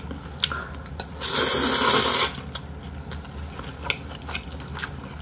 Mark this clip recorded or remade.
recorded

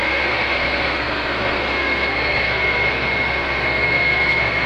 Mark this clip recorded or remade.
remade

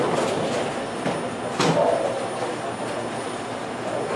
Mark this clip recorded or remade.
recorded